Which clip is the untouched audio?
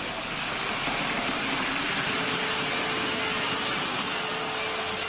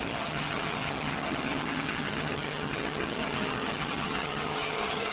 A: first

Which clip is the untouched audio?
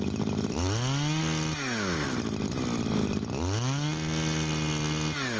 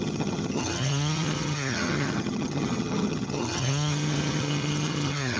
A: first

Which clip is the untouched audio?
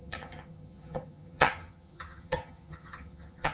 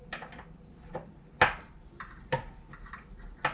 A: second